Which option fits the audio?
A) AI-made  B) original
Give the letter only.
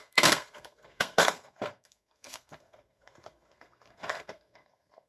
A